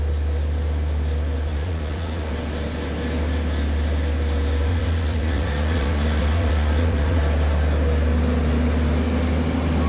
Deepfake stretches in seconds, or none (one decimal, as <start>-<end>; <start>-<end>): 1.5-2.3; 4.7-7.2